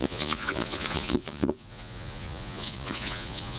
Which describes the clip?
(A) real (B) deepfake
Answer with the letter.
B